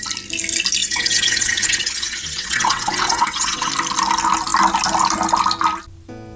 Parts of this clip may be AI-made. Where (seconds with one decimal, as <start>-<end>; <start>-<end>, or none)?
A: 0.8-3.7